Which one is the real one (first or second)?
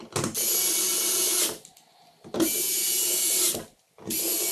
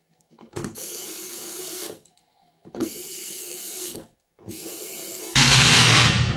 first